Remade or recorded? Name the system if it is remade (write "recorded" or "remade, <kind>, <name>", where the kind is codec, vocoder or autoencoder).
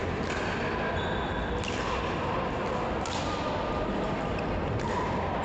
recorded